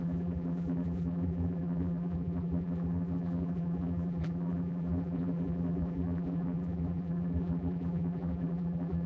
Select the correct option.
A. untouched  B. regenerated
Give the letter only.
B